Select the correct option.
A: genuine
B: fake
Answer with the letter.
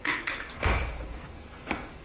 B